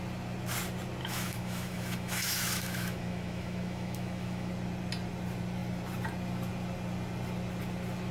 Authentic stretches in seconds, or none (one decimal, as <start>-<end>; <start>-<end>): 0.0-1.0; 4.5-8.1